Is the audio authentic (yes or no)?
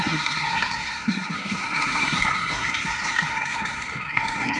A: no